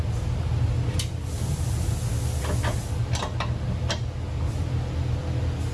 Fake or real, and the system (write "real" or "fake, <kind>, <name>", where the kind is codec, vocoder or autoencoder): real